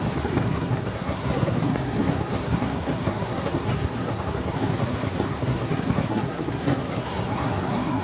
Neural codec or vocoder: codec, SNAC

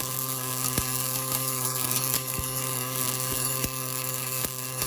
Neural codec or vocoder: codec, DAC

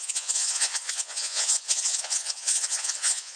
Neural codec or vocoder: vocoder, Vocos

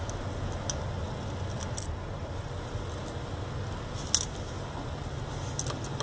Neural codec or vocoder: none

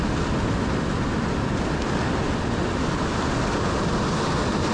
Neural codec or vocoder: none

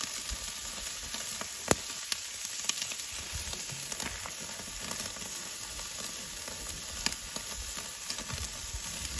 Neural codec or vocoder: none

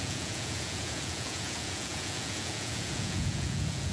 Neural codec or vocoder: vocoder, Vocos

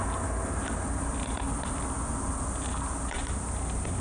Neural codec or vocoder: none